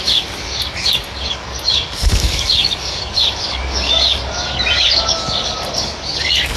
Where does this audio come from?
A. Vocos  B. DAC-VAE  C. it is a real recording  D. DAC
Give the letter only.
D